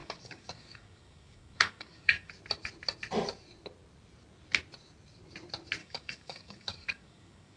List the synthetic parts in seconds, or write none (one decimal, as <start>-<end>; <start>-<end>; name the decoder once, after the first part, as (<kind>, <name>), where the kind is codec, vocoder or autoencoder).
0.0-2.3 (codec, DAC); 5.8-7.6